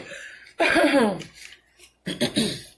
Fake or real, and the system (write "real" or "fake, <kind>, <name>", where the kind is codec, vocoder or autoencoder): fake, vocoder, BigVGAN v2